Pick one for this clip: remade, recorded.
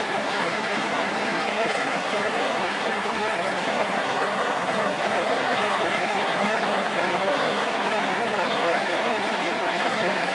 remade